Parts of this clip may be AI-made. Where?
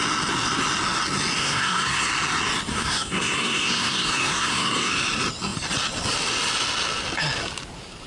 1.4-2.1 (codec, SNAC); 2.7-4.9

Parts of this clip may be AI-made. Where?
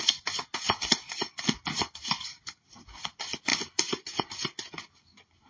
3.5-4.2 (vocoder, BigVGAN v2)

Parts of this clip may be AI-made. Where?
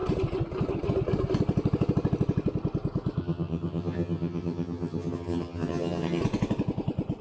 3.2-6.2 (vocoder, HiFi-GAN)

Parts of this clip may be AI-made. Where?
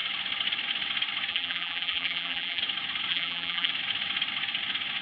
1.3-2.6 (vocoder, BigVGAN v2); 3.1-3.7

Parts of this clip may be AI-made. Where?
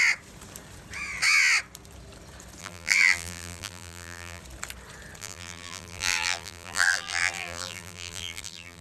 2.6-4.4 (vocoder, BigVGAN v2); 5.2-8.8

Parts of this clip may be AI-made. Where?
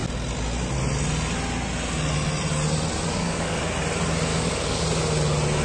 3.1-3.6 (codec, DAC); 4.3-4.8